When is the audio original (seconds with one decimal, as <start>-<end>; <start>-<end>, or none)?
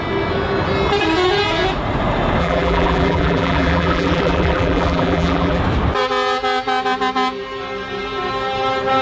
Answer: 0.0-2.4; 5.6-9.0